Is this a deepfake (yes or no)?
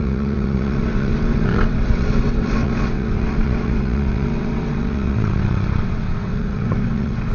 yes